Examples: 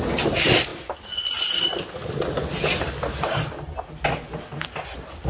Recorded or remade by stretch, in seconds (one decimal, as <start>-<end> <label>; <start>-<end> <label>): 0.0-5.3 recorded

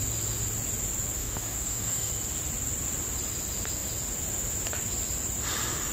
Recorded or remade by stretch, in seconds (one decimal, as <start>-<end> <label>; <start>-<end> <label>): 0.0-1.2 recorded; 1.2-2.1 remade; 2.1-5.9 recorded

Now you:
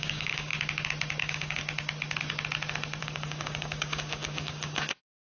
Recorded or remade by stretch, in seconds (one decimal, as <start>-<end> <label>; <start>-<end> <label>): 0.0-0.5 remade; 0.5-1.2 recorded; 1.2-1.6 remade; 1.6-3.0 recorded; 3.0-5.3 remade

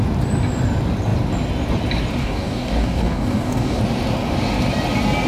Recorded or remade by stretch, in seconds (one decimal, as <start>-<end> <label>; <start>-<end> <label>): 0.0-2.2 recorded; 2.2-3.8 remade; 3.8-5.3 recorded

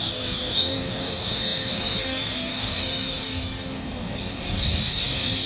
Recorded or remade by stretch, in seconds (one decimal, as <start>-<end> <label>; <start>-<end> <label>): 0.0-5.5 remade

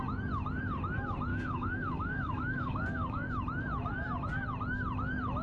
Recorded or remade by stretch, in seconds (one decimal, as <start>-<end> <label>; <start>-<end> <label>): 0.0-1.3 recorded; 1.3-3.3 remade; 3.3-5.4 recorded